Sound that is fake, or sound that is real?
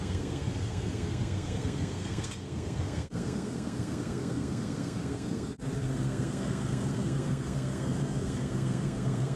fake